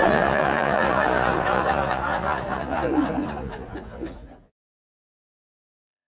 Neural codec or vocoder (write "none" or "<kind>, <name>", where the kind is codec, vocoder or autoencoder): vocoder, Vocos